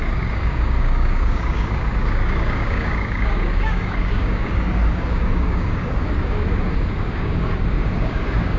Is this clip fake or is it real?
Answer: fake